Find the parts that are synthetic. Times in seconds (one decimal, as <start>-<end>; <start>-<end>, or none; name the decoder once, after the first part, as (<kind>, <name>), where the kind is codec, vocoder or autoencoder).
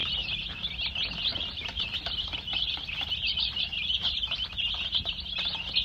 0.0-0.7 (vocoder, BigVGAN v2); 1.3-4.8